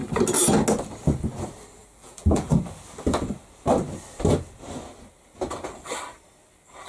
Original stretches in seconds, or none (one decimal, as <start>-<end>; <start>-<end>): 0.0-1.8; 2.6-6.9